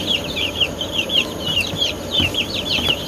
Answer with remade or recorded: remade